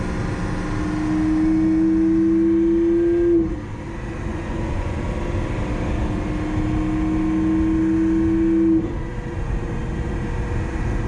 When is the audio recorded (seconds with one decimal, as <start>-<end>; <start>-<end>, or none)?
0.0-4.3; 5.0-11.1